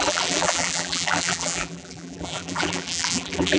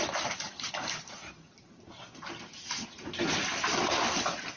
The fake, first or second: first